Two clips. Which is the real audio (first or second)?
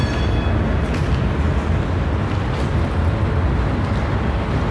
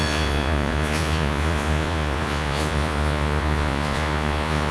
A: first